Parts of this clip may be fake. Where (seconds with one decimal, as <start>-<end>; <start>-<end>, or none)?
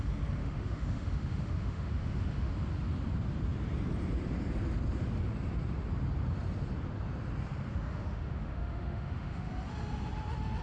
0.4-2.5; 7.9-9.5